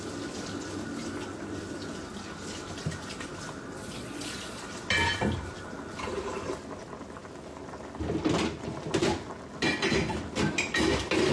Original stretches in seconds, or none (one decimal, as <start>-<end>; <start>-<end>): 0.0-3.8; 4.6-11.3